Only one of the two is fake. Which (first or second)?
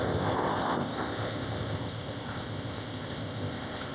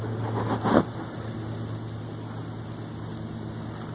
first